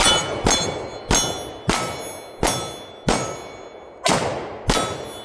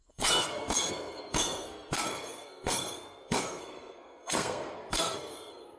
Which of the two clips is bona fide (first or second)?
first